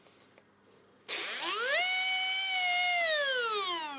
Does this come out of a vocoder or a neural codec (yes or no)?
no